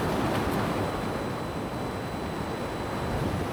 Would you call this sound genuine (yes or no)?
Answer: yes